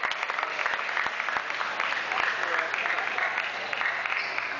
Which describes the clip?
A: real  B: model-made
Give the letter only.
A